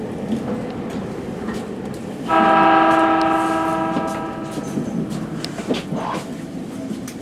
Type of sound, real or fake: real